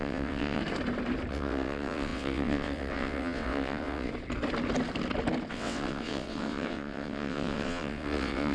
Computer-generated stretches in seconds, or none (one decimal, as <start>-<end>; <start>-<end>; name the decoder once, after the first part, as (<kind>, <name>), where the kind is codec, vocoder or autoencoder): 0.0-0.6 (vocoder, WaveNeXt); 1.3-4.1; 5.5-8.5